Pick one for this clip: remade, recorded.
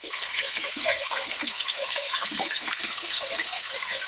remade